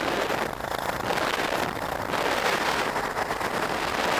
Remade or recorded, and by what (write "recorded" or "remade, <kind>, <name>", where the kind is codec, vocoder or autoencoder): recorded